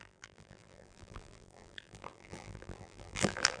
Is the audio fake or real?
fake